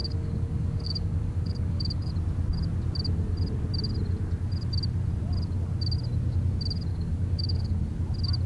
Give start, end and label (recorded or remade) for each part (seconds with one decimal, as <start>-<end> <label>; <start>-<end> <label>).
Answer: 0.0-2.1 remade; 2.1-6.9 recorded; 6.9-7.8 remade; 7.8-8.5 recorded